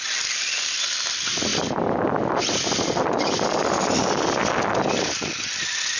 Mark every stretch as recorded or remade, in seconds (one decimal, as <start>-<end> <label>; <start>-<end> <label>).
0.0-6.0 recorded